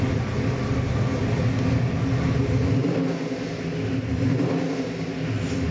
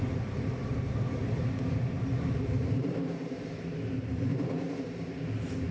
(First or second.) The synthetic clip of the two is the second